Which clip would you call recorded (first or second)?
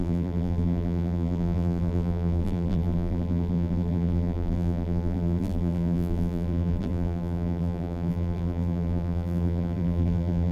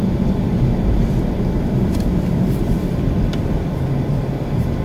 second